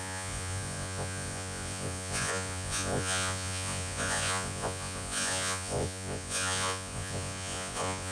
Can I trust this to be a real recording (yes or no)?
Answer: no